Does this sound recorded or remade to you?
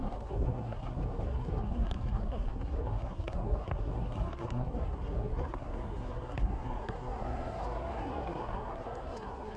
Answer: remade